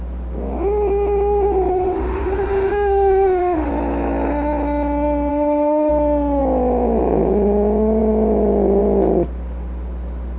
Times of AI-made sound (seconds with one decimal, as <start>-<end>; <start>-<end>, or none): 1.7-3.7; 5.3-5.9